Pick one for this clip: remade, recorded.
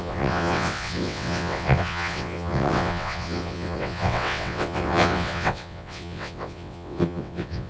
remade